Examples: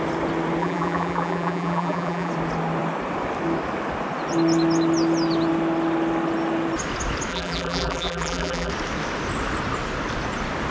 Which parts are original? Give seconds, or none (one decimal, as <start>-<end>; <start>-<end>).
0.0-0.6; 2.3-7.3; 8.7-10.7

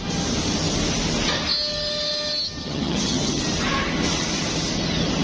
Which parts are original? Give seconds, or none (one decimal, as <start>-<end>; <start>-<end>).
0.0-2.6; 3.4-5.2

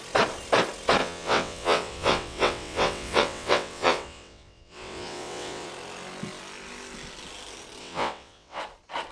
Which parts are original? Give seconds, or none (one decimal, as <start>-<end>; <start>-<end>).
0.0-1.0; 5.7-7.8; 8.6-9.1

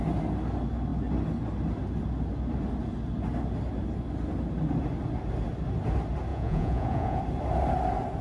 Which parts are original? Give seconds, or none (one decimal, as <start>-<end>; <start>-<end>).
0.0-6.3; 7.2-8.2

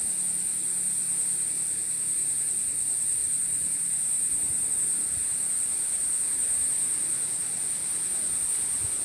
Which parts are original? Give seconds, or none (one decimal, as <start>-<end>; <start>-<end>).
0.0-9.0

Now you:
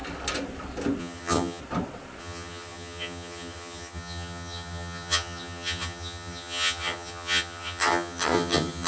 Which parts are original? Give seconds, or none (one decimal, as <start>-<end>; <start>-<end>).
0.0-1.0; 1.6-2.2